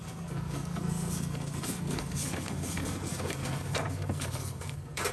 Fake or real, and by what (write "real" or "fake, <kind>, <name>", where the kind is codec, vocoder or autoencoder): fake, codec, SNAC